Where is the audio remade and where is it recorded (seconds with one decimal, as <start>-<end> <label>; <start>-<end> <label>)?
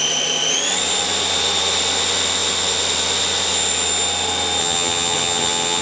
0.0-4.6 recorded; 4.6-5.8 remade